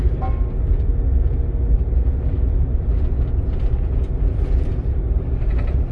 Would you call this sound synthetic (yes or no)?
no